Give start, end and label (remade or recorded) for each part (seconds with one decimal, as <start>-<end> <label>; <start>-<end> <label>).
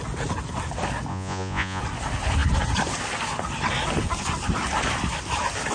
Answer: 0.0-1.1 recorded; 1.1-1.8 remade; 1.8-5.7 recorded